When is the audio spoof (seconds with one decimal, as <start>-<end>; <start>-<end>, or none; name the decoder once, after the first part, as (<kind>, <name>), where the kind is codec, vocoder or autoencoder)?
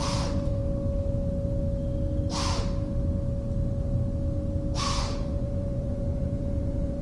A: 0.0-0.6 (vocoder, Vocos); 4.8-7.0